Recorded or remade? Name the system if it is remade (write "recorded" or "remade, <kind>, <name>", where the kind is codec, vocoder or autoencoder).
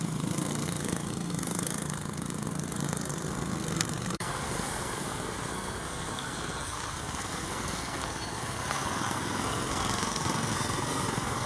remade, codec, SNAC